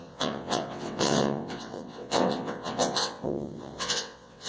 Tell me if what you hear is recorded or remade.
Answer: remade